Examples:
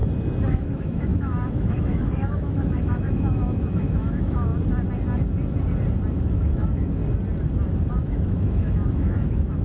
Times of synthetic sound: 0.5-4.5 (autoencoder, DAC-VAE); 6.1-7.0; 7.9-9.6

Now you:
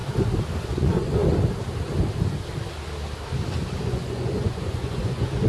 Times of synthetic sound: 0.7-1.2 (vocoder, Vocos); 3.8-5.5

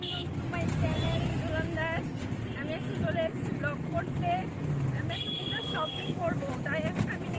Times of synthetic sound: 5.7-6.5 (codec, DAC)

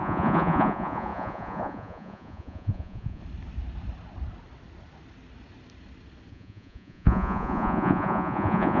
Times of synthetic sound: 0.0-3.2 (vocoder, Vocos); 6.3-8.8

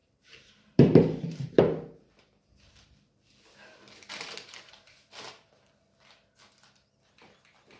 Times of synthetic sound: 0.0-1.6 (vocoder, BigVGAN v2)

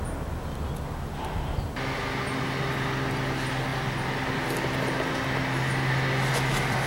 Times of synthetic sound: none

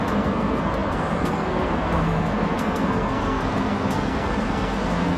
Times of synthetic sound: 0.0-5.2 (codec, SNAC)

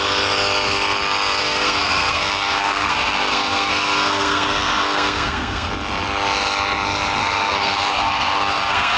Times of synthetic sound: 1.4-5.7 (codec, SNAC); 7.2-9.0